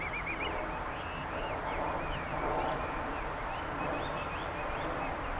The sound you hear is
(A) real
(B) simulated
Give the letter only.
A